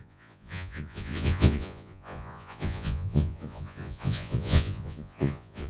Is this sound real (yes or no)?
no